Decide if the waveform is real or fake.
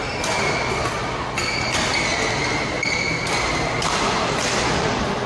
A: real